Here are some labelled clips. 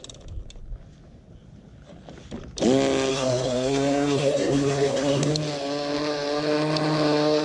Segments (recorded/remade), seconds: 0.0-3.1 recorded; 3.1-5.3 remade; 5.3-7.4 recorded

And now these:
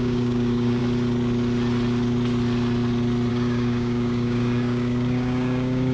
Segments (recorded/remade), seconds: 0.0-0.8 remade; 0.8-3.3 recorded; 3.3-5.9 remade